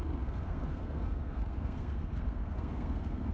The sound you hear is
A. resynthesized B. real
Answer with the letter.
A